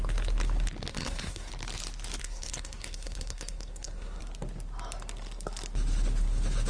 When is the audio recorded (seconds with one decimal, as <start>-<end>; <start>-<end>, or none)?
0.0-0.9; 1.5-2.2; 4.2-6.7